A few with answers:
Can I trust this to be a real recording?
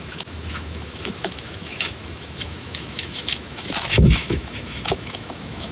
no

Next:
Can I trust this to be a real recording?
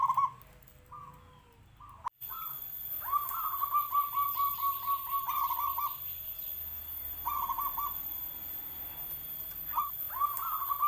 yes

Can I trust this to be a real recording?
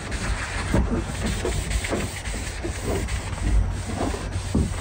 yes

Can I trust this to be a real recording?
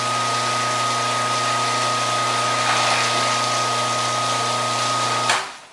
yes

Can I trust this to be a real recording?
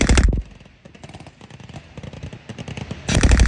yes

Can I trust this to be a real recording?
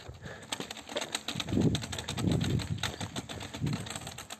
yes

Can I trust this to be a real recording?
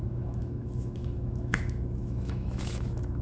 no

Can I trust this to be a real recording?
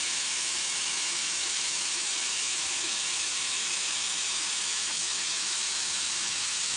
no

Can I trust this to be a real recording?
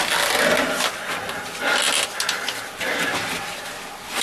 yes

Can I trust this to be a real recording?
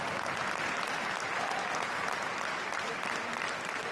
yes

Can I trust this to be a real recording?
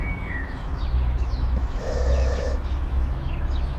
no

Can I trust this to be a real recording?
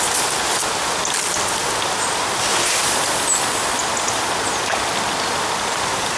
yes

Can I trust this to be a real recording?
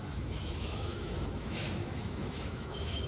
no